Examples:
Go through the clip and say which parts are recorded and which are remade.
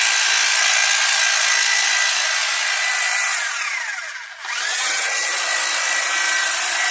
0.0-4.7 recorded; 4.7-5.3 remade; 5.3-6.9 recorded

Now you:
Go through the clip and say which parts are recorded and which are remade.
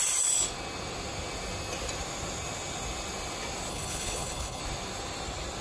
0.0-3.7 recorded; 3.7-4.6 remade; 4.6-5.6 recorded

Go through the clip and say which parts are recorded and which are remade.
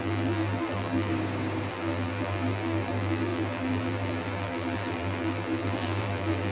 0.0-1.1 remade; 1.1-1.7 recorded; 1.7-6.5 remade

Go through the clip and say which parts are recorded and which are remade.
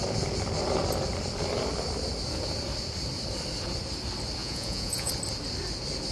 0.0-4.4 recorded; 4.4-5.1 remade; 5.1-6.1 recorded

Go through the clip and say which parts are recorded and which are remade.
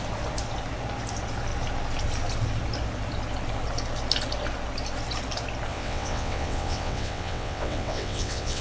0.0-5.7 recorded; 5.7-8.6 remade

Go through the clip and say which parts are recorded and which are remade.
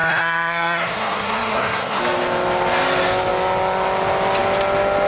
0.0-2.0 remade; 2.0-5.1 recorded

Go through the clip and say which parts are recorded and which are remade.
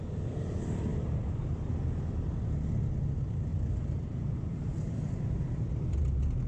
0.0-0.9 recorded; 0.9-1.7 remade; 1.7-3.5 recorded; 3.5-5.1 remade; 5.1-6.5 recorded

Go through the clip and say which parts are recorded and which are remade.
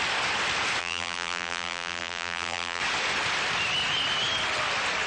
0.0-0.8 recorded; 0.8-2.8 remade; 2.8-5.1 recorded